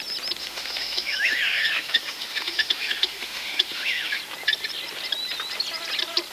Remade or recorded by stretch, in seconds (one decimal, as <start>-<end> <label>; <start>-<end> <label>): 0.0-0.4 recorded; 0.4-4.2 remade; 4.2-6.3 recorded